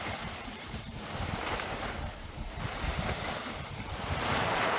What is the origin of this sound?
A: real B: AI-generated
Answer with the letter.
B